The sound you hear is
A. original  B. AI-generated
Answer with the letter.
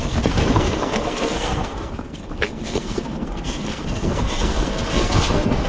B